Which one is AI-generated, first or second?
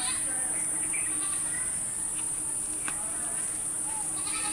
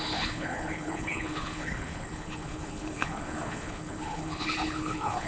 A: second